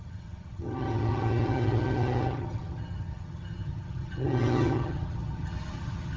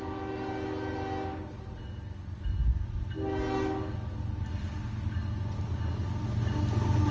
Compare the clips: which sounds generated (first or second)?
first